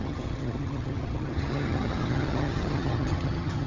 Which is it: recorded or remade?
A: remade